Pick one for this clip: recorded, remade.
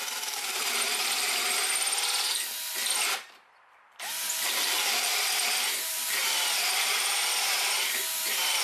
remade